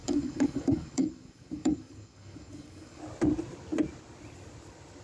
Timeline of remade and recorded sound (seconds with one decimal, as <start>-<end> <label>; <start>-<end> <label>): 0.0-3.0 remade; 3.0-5.0 recorded